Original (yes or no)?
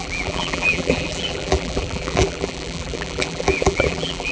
no